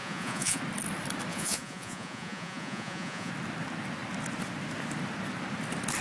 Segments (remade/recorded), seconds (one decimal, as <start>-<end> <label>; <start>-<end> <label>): 0.0-0.6 remade; 0.6-1.3 recorded; 1.3-3.3 remade; 3.3-6.0 recorded